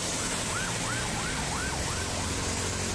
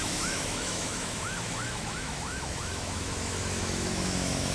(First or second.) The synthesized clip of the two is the second